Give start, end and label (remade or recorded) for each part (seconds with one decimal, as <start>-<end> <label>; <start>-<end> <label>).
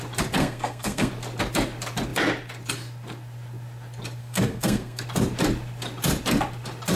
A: 0.0-0.4 recorded; 0.4-1.1 remade; 1.1-4.2 recorded; 4.2-5.0 remade; 5.0-7.0 recorded